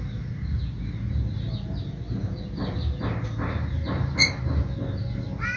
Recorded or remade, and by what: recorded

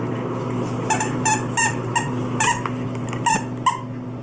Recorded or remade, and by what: recorded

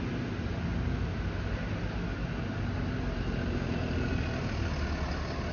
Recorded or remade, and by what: recorded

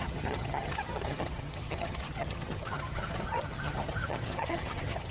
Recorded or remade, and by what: remade, vocoder, HiFi-GAN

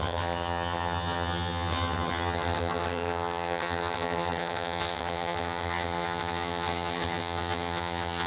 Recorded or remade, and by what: remade, vocoder, HiFi-GAN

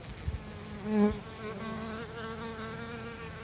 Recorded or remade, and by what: recorded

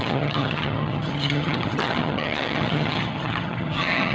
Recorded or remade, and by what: remade, vocoder, HiFi-GAN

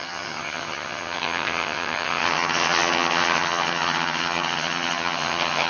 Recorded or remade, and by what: remade, vocoder, HiFi-GAN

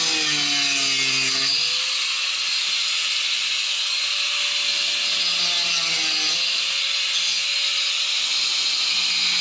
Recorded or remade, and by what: recorded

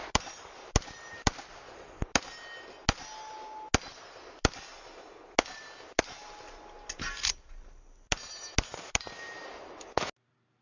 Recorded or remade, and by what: recorded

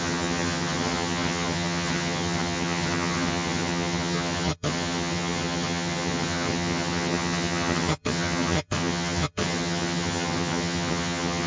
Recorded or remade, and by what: remade, vocoder, HiFi-GAN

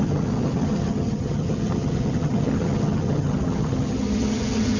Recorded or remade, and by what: remade, vocoder, HiFi-GAN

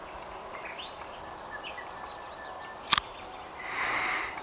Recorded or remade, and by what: recorded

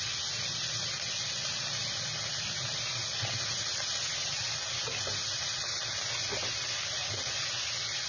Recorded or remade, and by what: recorded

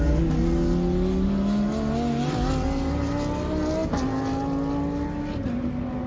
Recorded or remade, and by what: recorded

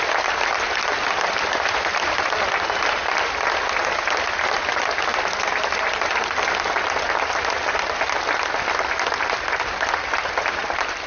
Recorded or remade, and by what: recorded